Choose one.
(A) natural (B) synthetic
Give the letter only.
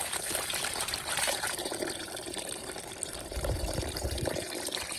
B